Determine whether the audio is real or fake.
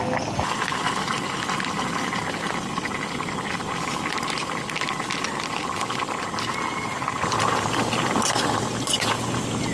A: real